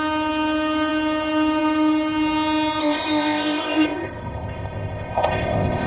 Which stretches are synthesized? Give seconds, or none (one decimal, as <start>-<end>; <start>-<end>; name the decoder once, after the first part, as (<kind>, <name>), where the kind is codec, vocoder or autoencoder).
2.8-5.9 (codec, ZipCodec)

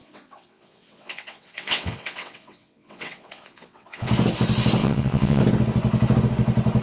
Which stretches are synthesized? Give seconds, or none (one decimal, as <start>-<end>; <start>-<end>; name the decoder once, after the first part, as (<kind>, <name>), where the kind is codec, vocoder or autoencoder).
0.0-4.1 (vocoder, WaveNeXt); 4.8-5.4

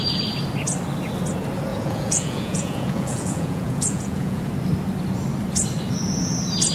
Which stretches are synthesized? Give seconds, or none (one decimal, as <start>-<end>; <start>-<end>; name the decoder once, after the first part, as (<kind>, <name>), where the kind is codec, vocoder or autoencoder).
1.7-4.5 (vocoder, Vocos)

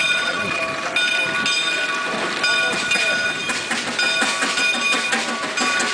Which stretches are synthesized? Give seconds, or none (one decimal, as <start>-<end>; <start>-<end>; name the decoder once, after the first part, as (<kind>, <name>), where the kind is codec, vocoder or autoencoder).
0.0-0.6 (vocoder, Vocos)

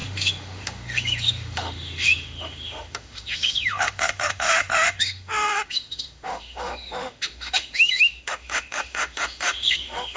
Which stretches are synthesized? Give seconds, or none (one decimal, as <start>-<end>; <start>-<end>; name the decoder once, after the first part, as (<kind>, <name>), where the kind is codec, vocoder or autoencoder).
0.0-10.2 (autoencoder, DAC-VAE)

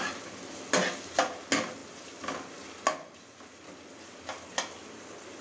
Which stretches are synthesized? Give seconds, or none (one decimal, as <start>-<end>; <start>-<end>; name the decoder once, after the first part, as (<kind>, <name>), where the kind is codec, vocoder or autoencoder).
none

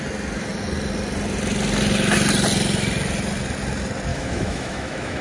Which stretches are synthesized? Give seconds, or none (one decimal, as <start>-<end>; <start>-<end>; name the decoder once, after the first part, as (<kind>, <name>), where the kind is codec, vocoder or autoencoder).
4.1-5.2 (autoencoder, DAC-VAE)